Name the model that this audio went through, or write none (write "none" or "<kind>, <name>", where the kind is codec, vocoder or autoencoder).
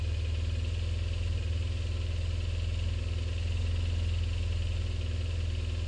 none